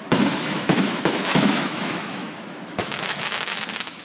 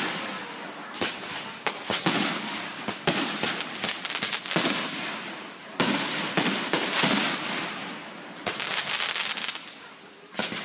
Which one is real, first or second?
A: second